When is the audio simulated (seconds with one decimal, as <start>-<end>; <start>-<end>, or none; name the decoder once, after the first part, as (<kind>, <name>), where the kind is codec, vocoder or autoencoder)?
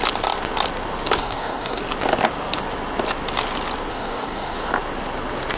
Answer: 1.2-1.8 (codec, DAC); 3.9-4.7